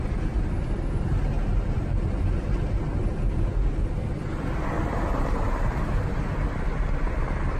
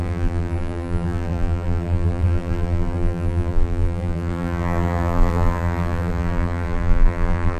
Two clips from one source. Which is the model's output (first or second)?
second